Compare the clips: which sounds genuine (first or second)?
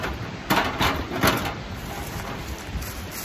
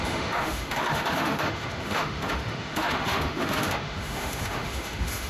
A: first